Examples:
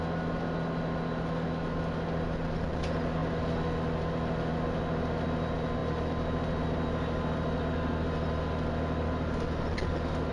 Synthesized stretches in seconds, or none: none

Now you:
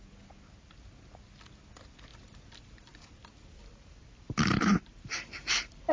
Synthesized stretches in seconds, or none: 2.1-5.9 (vocoder, BigVGAN v2)

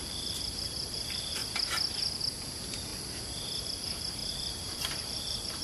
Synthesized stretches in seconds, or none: 0.0-1.4 (vocoder, BigVGAN v2); 2.4-2.9; 3.6-5.6

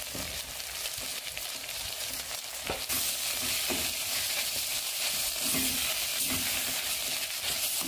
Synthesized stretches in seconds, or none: 1.1-2.9 (vocoder, BigVGAN v2); 4.0-5.3; 6.1-6.8

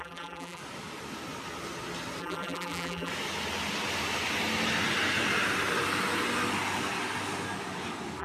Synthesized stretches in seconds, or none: 0.0-0.6 (vocoder, BigVGAN v2); 2.2-3.1

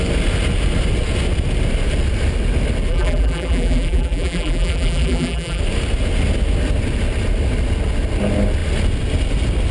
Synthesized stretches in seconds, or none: 2.9-5.6 (vocoder, BigVGAN v2)

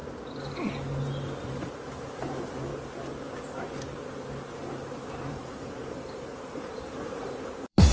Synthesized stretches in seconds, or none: 1.5-2.7 (vocoder, BigVGAN v2); 5.3-7.9

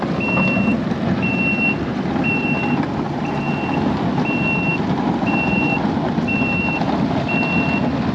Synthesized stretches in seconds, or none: 0.7-1.4 (vocoder, BigVGAN v2); 1.9-3.4; 4.7-7.1